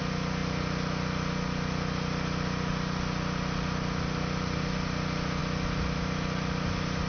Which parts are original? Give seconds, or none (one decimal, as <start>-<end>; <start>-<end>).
0.0-7.1